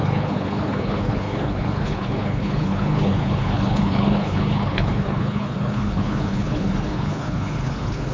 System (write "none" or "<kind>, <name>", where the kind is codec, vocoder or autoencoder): codec, HILCodec